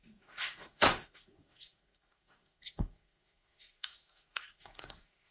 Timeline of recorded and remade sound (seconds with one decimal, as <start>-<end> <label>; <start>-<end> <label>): 0.0-5.3 remade